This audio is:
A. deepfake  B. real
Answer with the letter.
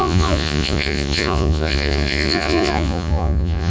A